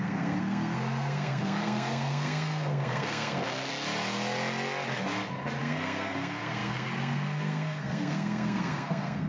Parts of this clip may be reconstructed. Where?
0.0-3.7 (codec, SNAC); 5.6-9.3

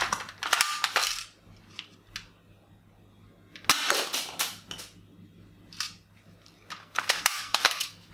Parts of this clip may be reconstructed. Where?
6.8-8.1 (codec, SNAC)

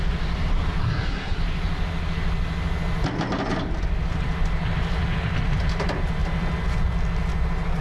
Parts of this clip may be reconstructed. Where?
0.8-1.4 (codec, SNAC)

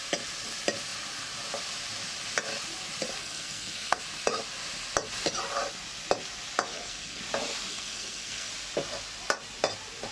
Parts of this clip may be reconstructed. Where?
3.2-4.0 (codec, SNAC); 6.7-7.2; 7.7-8.5

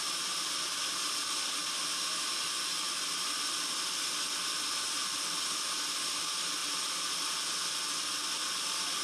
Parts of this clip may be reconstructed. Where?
none

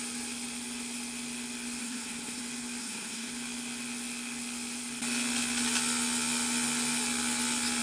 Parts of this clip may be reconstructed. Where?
1.8-2.4 (codec, SNAC); 2.8-3.3

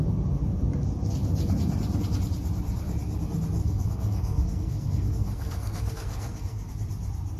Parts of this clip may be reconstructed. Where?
3.6-6.7 (codec, SNAC)

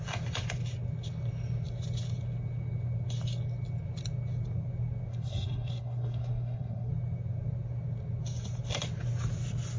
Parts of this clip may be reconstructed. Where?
5.1-6.9 (codec, SNAC)